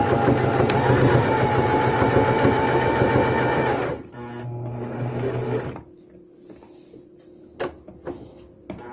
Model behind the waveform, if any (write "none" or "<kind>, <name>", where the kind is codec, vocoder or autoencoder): none